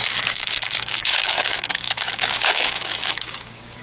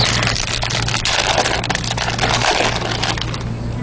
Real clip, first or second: second